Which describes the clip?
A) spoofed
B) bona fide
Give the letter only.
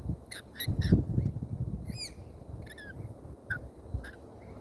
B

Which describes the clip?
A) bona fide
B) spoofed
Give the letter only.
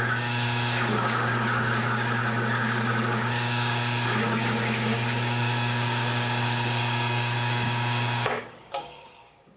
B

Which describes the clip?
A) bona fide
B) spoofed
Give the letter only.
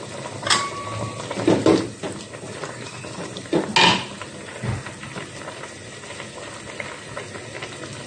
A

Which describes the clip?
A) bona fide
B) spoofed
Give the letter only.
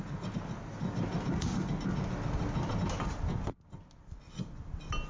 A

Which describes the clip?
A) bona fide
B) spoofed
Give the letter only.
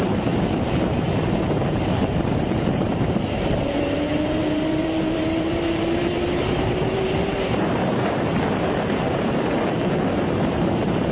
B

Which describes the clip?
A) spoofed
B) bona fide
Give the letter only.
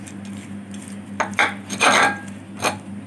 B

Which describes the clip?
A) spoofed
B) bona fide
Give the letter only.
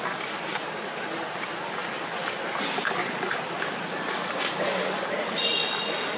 B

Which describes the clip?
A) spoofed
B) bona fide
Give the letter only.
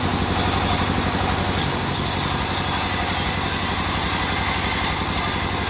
B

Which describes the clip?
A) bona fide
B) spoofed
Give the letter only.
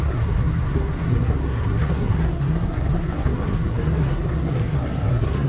B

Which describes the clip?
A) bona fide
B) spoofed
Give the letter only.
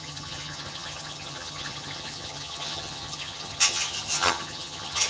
B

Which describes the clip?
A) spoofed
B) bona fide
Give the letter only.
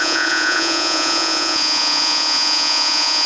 A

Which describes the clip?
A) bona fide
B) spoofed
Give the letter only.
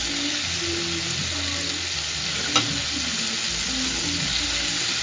A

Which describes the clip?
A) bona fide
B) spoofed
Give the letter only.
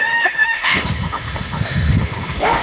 B